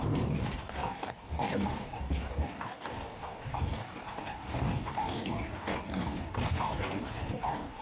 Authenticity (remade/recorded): remade